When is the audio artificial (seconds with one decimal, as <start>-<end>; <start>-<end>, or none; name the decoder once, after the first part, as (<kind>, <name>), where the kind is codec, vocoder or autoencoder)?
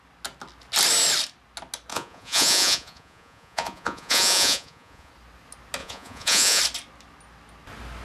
1.9-5.1 (vocoder, Vocos); 5.8-6.6